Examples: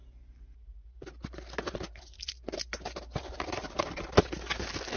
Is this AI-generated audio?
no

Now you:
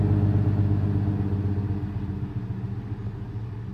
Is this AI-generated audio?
no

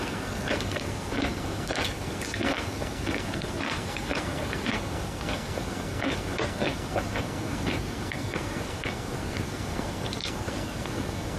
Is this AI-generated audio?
yes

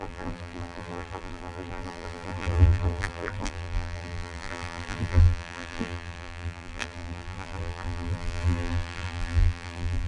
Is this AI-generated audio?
yes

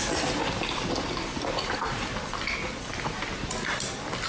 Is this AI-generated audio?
no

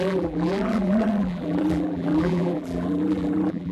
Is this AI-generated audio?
yes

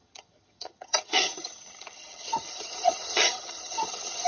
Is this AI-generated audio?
yes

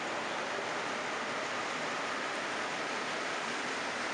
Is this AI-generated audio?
yes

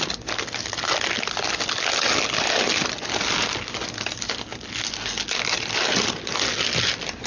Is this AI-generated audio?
no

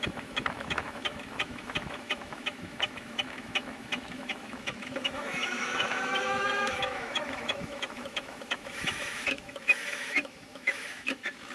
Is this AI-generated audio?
yes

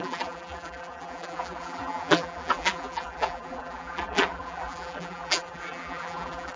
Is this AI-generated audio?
yes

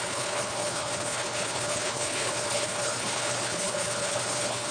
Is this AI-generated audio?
yes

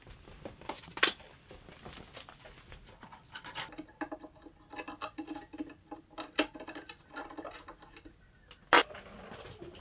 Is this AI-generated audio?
no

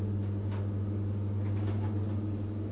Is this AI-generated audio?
no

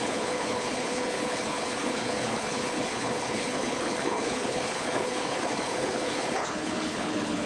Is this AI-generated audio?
yes